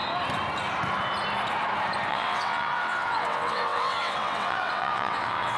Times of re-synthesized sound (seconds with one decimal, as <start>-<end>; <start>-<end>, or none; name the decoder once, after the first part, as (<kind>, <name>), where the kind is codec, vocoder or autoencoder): 2.1-5.6 (vocoder, WaveNeXt)